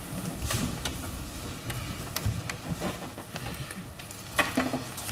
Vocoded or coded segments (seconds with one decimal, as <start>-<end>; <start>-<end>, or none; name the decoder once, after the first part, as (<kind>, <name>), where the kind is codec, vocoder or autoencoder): none